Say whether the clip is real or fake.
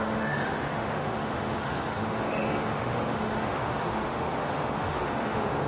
fake